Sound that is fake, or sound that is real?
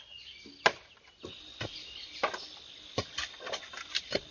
real